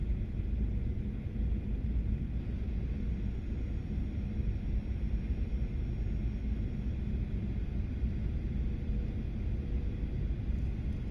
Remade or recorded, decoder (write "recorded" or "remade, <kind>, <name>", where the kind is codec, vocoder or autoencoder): recorded